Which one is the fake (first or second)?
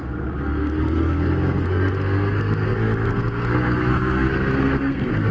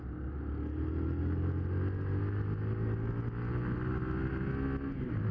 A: first